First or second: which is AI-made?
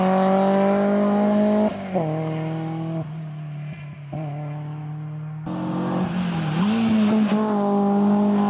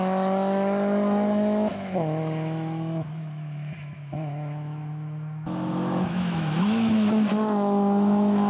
second